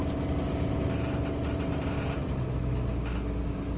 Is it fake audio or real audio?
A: real